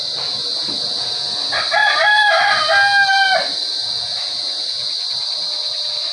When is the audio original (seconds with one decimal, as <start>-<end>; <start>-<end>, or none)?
0.0-6.1